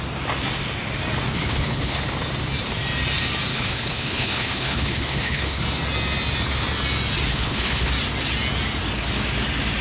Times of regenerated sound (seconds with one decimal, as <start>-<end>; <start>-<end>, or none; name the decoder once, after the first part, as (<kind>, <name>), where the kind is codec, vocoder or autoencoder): 1.3-2.0 (codec, HILCodec); 3.5-5.6; 7.3-7.9

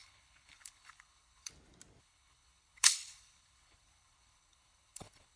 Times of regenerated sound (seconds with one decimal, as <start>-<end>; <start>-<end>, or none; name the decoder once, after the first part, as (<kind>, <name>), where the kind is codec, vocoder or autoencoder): 0.0-1.5 (codec, HILCodec); 2.0-5.4

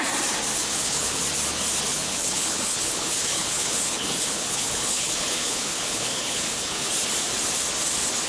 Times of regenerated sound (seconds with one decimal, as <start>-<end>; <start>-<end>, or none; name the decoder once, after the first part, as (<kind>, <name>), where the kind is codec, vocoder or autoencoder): 0.5-1.2 (codec, HILCodec); 1.9-6.9

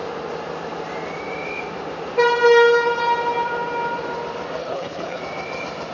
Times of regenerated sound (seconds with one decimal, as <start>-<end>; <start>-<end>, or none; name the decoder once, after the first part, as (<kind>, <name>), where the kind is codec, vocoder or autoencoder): 4.6-5.2 (codec, HILCodec)

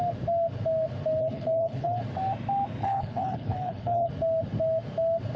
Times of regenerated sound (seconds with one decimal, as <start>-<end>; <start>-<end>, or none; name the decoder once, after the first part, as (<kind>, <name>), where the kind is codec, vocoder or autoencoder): 1.2-2.0 (codec, HILCodec); 2.8-4.1